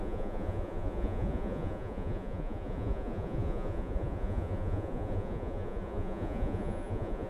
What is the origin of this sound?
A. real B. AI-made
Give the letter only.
B